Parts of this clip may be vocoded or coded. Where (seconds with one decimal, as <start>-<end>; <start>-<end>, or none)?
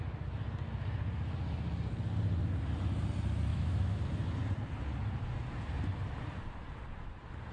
3.5-4.0